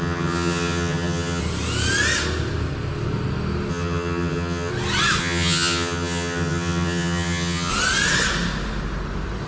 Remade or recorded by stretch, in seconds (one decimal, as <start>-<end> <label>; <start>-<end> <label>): 0.0-1.4 remade; 1.4-3.7 recorded; 3.7-4.7 remade; 4.7-5.2 recorded; 5.2-7.7 remade; 7.7-9.5 recorded